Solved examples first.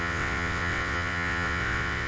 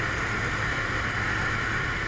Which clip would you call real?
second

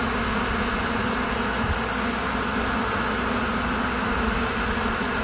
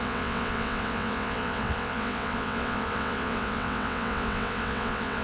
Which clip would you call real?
first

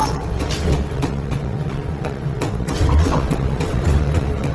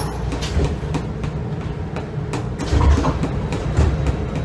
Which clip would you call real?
second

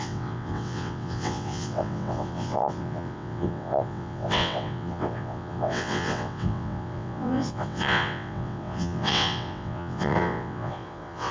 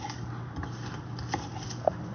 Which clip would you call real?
second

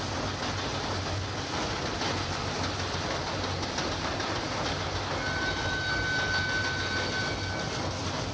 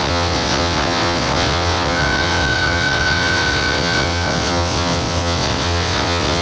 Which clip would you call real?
first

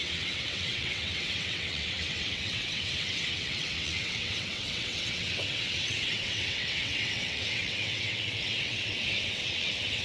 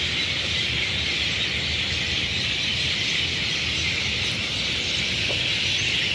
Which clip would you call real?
second